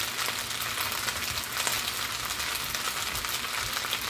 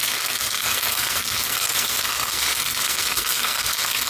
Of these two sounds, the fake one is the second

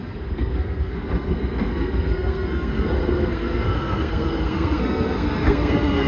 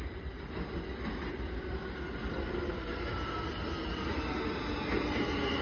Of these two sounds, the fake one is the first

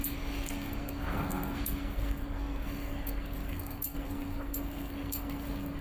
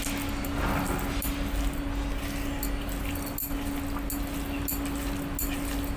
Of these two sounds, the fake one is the first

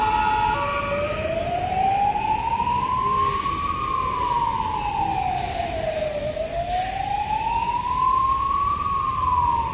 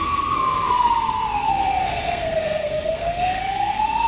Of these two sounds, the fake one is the second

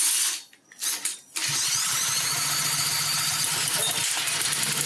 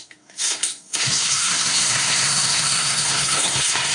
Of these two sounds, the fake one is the second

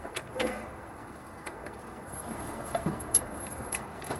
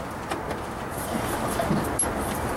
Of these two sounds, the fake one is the first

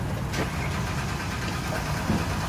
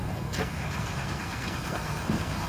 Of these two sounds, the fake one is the second